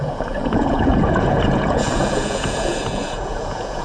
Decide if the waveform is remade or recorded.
remade